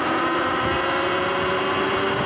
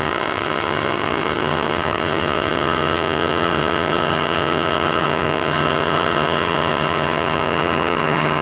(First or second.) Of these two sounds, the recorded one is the first